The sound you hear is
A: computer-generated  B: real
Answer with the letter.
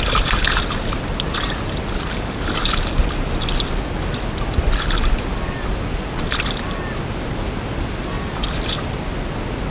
B